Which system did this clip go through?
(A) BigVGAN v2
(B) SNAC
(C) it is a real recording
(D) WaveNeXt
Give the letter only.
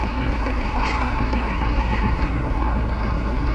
B